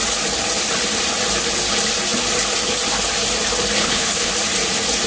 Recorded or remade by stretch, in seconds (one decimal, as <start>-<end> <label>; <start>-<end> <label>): 0.0-3.8 recorded; 3.8-4.3 remade; 4.3-5.1 recorded